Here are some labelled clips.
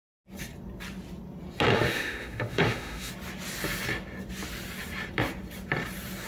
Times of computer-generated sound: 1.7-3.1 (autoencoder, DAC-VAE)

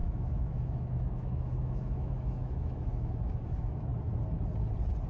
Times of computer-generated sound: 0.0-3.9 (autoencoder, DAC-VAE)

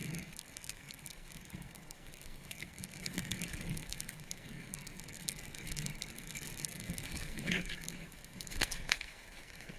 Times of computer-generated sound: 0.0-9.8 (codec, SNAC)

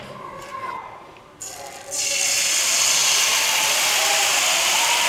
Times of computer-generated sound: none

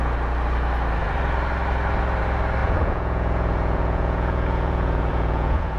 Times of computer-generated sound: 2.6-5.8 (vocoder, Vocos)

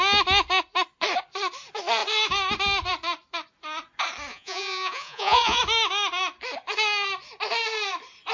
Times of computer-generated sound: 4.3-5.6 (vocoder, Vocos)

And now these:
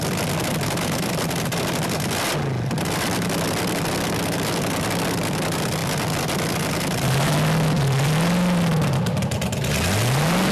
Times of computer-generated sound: none

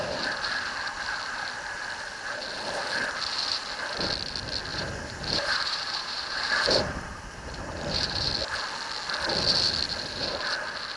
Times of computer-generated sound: 4.7-8.3 (vocoder, BigVGAN v2)